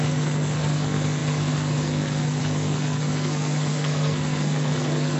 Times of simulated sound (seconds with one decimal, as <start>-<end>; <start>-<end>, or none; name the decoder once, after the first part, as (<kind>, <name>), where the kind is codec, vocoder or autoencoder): 0.0-5.2 (codec, SNAC)